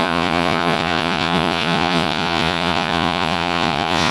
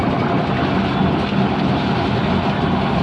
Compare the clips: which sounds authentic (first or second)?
second